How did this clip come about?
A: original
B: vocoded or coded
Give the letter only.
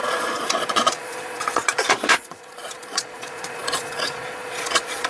B